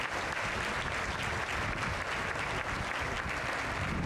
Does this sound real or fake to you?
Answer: real